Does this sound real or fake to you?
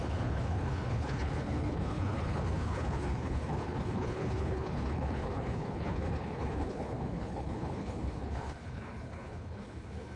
fake